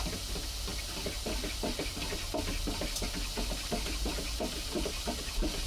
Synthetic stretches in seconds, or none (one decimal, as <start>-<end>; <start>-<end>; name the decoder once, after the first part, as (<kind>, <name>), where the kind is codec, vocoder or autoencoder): none